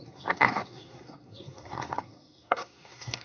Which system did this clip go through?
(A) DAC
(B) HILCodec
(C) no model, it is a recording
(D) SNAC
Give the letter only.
D